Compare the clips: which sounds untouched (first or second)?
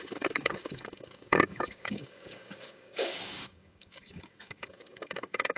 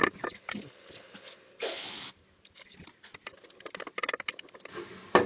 second